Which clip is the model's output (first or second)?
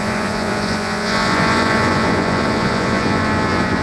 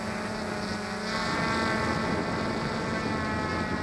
first